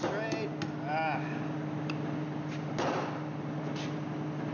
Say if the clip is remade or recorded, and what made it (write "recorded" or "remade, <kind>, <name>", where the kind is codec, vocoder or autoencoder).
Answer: recorded